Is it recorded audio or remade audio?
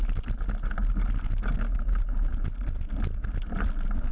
recorded